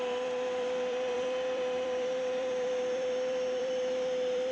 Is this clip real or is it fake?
fake